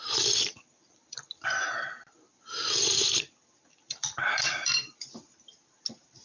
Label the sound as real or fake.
fake